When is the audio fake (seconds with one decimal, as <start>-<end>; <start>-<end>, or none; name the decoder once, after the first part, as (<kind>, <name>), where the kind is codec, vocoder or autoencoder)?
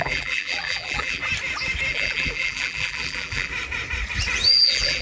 0.0-1.2 (vocoder, BigVGAN v2); 1.9-3.5; 4.5-5.0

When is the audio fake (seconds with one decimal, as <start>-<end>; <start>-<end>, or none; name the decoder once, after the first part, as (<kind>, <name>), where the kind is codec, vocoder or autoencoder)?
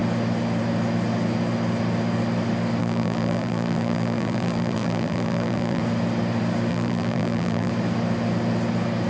2.8-5.8 (vocoder, BigVGAN v2); 6.7-7.7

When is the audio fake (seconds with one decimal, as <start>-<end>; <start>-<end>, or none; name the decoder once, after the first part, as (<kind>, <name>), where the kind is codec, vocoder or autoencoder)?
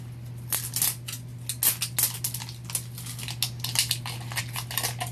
none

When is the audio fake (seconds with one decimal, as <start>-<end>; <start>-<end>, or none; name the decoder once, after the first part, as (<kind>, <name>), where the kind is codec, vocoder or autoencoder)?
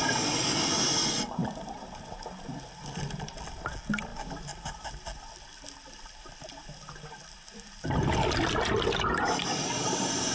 1.4-3.3 (vocoder, BigVGAN v2); 4.1-8.3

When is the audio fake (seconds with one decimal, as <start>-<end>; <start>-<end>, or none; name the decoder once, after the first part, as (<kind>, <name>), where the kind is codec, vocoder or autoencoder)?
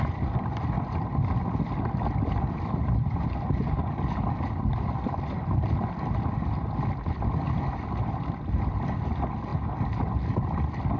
none